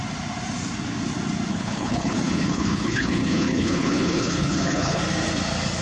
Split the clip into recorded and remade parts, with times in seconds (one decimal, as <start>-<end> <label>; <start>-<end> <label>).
0.0-1.5 recorded; 1.5-5.0 remade; 5.0-5.8 recorded